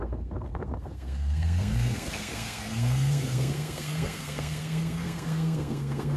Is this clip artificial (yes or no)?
yes